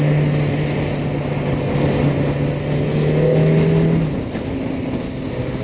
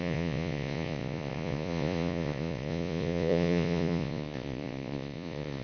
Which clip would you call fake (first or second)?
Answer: second